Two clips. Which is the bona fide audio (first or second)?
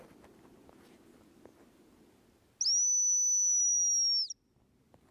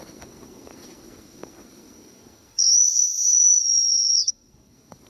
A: first